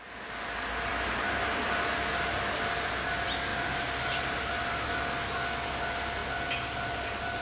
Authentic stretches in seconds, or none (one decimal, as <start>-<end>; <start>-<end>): 0.0-7.4